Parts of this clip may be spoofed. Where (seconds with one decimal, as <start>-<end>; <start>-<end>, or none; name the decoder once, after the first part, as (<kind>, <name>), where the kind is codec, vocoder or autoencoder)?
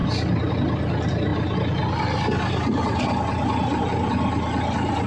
none